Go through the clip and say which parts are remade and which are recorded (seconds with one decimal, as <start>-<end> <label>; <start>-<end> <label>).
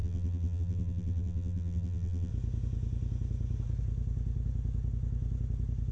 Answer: 0.0-2.3 remade; 2.3-5.9 recorded